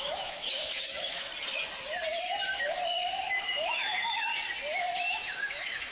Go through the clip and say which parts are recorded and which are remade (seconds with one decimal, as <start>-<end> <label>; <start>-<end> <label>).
0.0-1.3 remade; 1.3-2.6 recorded; 2.6-4.3 remade; 4.3-5.1 recorded; 5.1-5.9 remade